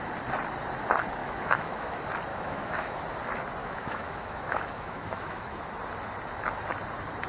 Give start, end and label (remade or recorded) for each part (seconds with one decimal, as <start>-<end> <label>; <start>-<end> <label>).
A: 0.0-1.2 recorded; 1.2-1.9 remade; 1.9-2.3 recorded; 2.3-3.0 remade; 3.0-3.6 recorded; 3.6-5.6 remade; 5.6-7.3 recorded